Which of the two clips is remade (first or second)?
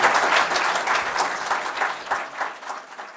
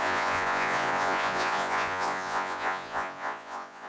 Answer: second